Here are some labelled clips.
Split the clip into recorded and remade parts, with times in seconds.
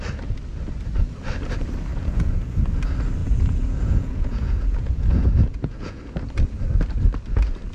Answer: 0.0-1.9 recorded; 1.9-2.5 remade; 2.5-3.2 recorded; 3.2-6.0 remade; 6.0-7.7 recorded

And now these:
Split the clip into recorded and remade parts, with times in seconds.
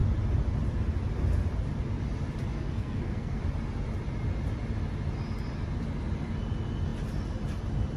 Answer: 0.0-2.5 recorded; 2.5-3.4 remade; 3.4-8.0 recorded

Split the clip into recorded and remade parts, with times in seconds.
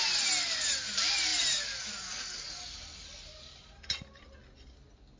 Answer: 0.0-5.2 recorded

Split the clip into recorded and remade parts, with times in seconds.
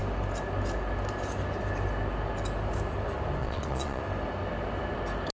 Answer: 0.0-3.4 recorded; 3.4-4.0 remade; 4.0-5.3 recorded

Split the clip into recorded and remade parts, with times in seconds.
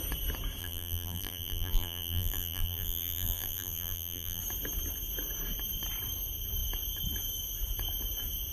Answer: 0.0-0.6 recorded; 0.6-4.4 remade; 4.4-8.5 recorded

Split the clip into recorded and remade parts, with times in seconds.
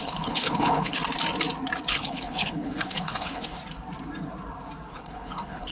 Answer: 0.0-1.0 remade; 1.0-1.9 recorded; 1.9-3.6 remade; 3.6-4.9 recorded; 4.9-5.7 remade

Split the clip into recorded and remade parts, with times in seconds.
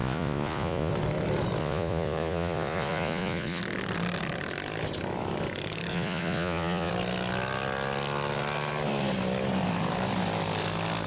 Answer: 0.0-0.9 remade; 0.9-1.6 recorded; 1.6-3.6 remade; 3.6-5.9 recorded; 5.9-6.9 remade; 6.9-11.1 recorded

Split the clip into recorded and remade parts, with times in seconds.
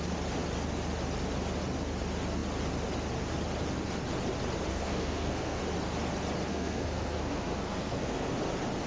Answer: 0.0-4.7 recorded; 4.7-5.6 remade; 5.6-6.5 recorded; 6.5-8.3 remade; 8.3-8.9 recorded